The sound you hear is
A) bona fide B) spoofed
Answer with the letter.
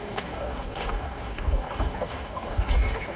B